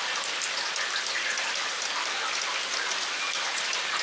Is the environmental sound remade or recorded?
recorded